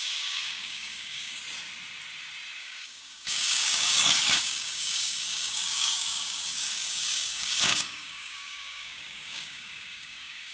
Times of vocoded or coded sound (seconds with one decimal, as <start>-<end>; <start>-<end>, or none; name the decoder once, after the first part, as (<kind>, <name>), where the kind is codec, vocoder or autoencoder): 0.0-1.4 (codec, DAC); 2.6-10.5